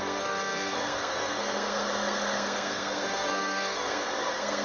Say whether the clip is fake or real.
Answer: fake